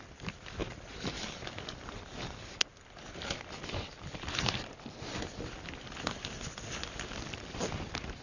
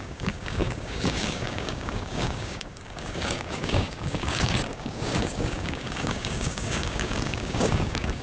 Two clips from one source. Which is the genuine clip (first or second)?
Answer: first